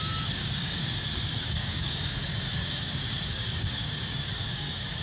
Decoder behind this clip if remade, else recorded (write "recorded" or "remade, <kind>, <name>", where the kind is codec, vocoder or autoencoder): remade, codec, DAC